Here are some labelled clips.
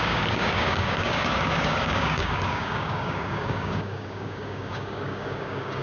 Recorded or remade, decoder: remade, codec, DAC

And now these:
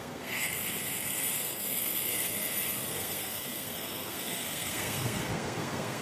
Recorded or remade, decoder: remade, codec, SNAC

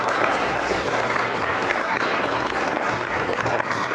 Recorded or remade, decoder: remade, codec, SNAC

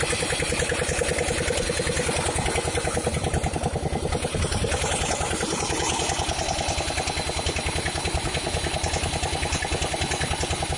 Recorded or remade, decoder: recorded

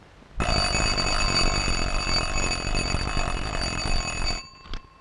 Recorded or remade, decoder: recorded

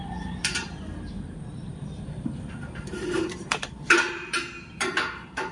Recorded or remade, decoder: remade, vocoder, BigVGAN v2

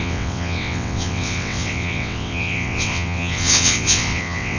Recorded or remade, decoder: remade, vocoder, WaveNeXt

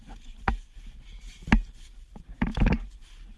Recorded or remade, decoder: recorded